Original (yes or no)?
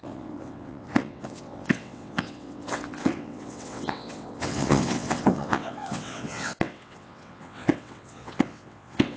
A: no